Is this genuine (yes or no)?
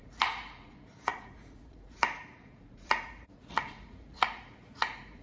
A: no